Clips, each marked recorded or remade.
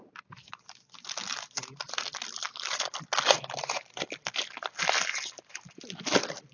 recorded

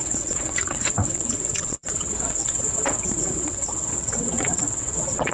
remade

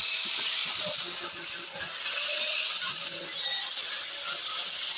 recorded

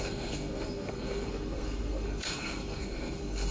remade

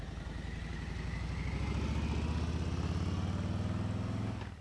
recorded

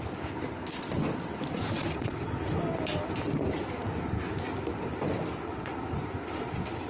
recorded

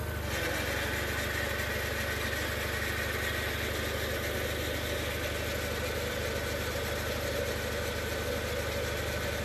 recorded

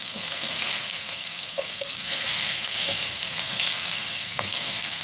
remade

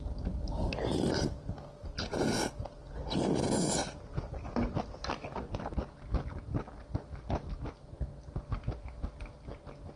recorded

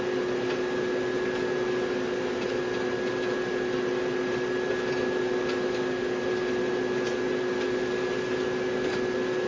recorded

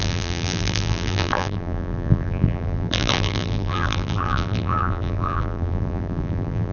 remade